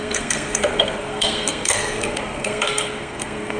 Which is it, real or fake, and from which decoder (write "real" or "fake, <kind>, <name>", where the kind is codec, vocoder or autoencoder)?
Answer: fake, codec, SNAC